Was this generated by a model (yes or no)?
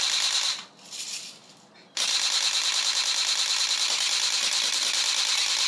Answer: no